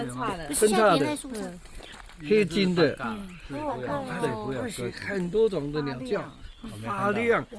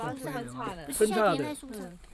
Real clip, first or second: first